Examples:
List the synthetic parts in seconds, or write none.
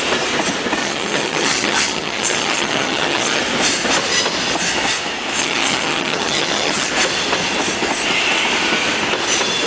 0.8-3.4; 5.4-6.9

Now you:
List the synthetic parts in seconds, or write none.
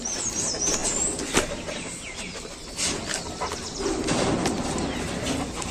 none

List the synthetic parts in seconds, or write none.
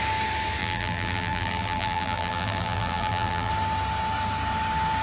0.6-3.5